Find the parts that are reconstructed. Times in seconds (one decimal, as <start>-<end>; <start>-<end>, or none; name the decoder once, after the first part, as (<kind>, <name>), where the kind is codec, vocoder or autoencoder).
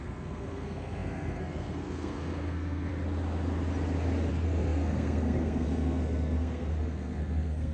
0.0-2.9 (codec, SNAC); 4.3-7.7